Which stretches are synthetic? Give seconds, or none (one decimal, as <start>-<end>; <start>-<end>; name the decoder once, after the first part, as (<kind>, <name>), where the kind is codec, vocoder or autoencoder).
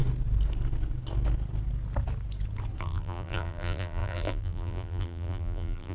2.8-5.9 (vocoder, BigVGAN v2)